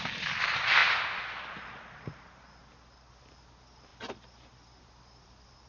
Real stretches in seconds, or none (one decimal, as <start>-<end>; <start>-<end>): 0.0-5.7